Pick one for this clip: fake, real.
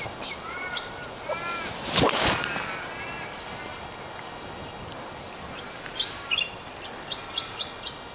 real